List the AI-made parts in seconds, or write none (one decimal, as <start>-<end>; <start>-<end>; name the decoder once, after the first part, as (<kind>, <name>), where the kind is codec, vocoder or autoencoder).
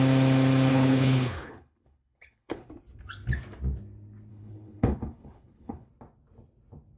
0.7-2.7 (codec, HILCodec); 4.3-5.9